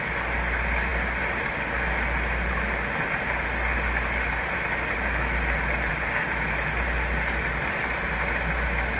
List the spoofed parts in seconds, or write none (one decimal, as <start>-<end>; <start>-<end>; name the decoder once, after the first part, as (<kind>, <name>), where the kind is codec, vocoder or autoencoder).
none

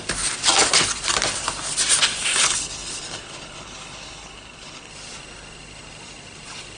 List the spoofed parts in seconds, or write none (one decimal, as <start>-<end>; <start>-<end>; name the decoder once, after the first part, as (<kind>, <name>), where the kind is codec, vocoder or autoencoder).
2.3-4.9 (codec, HILCodec)

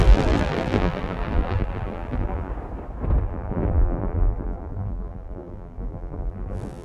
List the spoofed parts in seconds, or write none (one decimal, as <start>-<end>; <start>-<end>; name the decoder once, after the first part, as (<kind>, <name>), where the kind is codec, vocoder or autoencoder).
0.0-2.5 (vocoder, BigVGAN v2); 3.2-6.8

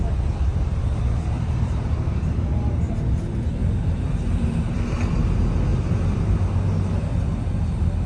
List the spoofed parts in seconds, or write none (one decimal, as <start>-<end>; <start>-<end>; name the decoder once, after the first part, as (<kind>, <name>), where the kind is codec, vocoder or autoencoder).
0.5-2.6 (vocoder, BigVGAN v2); 3.6-5.2; 5.7-6.2

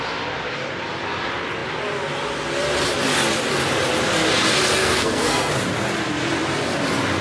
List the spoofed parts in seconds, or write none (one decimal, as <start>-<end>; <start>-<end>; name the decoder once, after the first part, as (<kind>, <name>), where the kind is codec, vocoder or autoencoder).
4.8-5.5 (codec, SNAC)

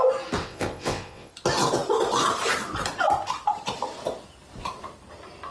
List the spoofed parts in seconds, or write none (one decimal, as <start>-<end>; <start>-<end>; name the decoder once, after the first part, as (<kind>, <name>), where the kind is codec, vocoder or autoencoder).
0.4-1.3 (vocoder, WaveNeXt)

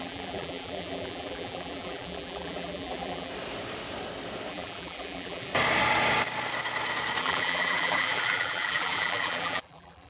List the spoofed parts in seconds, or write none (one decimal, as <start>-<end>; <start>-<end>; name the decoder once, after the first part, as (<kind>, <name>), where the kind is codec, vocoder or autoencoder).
0.0-3.3 (vocoder, BigVGAN v2); 4.5-5.5; 7.2-10.1